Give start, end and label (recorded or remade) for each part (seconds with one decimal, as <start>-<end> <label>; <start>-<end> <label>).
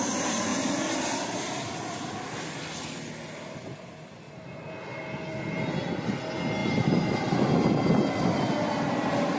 0.0-9.4 recorded